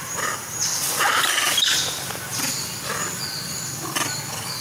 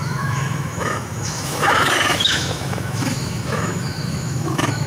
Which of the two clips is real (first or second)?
first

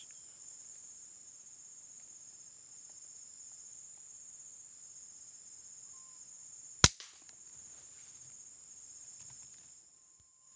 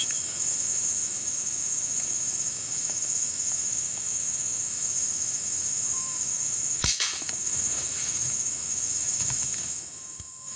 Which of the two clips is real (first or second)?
first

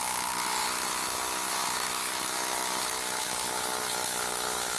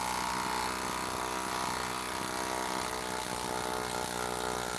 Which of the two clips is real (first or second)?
second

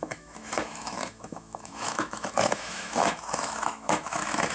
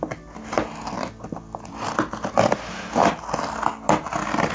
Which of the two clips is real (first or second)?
second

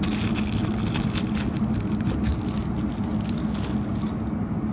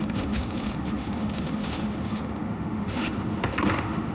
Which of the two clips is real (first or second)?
first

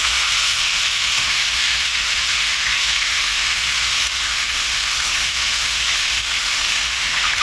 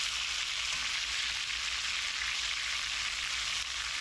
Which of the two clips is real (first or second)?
second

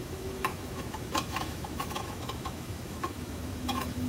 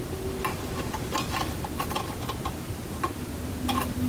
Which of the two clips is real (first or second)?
second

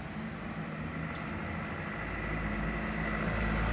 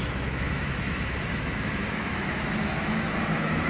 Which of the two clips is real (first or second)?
first